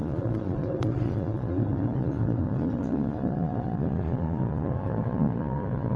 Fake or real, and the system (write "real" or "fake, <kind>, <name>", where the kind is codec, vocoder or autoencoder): fake, vocoder, Vocos